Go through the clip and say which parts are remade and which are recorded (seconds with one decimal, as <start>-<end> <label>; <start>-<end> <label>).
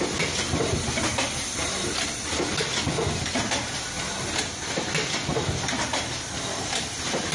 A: 0.0-7.3 recorded